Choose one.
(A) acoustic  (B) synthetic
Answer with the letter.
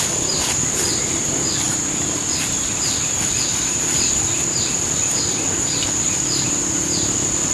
A